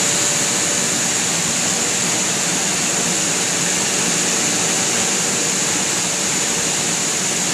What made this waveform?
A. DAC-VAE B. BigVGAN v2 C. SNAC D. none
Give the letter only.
D